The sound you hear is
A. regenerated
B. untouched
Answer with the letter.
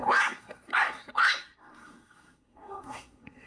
A